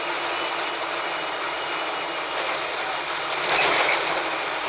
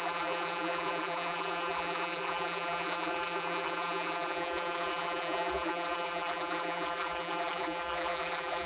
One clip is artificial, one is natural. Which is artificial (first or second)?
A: second